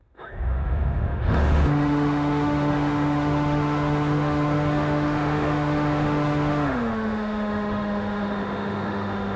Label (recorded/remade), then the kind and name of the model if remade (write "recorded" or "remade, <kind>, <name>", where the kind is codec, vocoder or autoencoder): remade, autoencoder, DAC-VAE